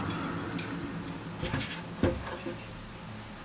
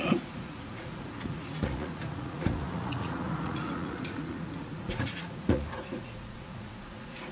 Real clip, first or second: first